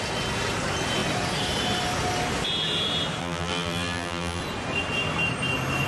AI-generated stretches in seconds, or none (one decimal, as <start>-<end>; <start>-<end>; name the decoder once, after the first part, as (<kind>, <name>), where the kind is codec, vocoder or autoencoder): 3.2-4.4 (vocoder, BigVGAN v2)